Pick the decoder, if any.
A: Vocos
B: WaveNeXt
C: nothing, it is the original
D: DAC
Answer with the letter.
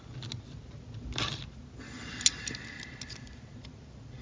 C